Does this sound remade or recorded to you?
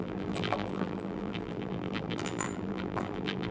remade